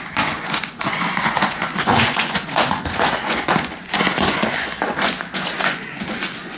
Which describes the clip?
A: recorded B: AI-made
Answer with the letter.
B